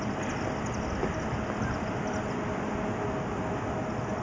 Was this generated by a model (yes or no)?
no